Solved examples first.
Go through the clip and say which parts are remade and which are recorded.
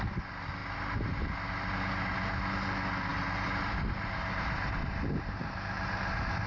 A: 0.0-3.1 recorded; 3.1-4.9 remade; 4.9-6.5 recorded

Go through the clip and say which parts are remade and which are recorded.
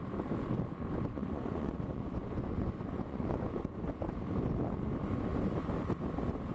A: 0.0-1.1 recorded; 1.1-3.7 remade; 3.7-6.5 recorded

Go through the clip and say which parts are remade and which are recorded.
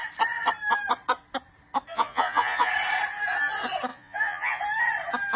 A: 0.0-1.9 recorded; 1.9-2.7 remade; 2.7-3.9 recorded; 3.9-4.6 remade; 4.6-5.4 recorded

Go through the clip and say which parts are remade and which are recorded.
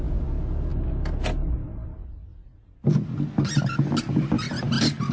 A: 0.0-5.1 recorded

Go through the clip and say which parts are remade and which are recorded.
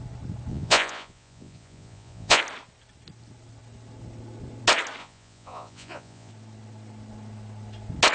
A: 0.0-0.5 recorded; 0.5-2.4 remade; 2.4-5.0 recorded; 5.0-6.3 remade; 6.3-8.1 recorded